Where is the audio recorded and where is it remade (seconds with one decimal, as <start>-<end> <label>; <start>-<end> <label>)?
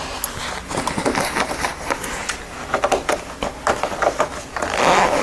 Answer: 0.0-5.2 recorded